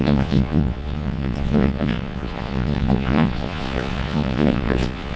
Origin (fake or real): fake